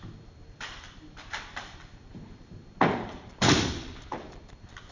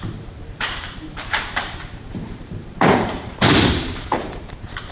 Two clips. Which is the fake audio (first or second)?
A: second